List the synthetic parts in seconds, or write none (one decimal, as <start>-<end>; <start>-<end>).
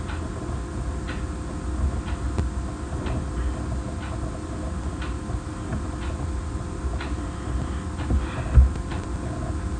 none